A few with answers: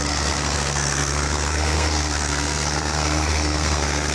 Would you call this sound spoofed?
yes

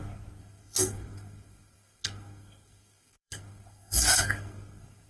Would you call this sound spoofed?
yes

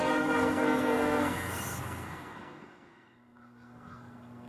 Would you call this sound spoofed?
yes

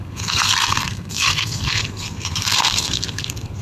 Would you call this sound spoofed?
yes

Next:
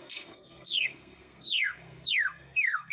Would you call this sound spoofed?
yes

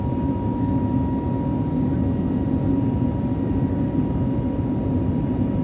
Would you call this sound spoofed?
no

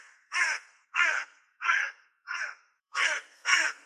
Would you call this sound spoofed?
yes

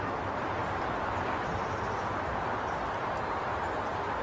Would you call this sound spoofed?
no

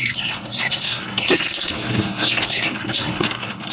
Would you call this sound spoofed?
yes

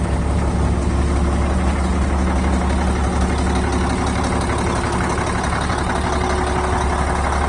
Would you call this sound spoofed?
no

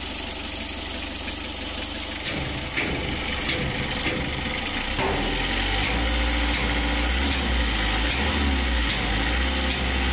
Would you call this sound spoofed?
no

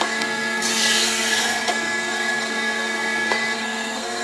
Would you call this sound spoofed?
yes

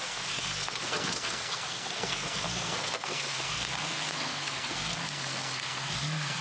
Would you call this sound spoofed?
yes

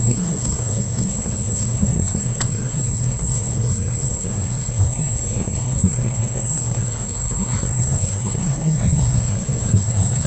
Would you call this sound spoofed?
yes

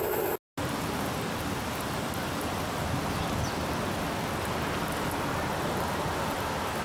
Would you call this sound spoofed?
no